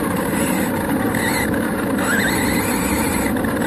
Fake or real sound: real